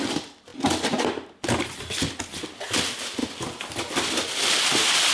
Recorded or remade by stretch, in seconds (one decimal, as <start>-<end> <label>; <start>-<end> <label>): 0.0-3.2 recorded; 3.2-5.1 remade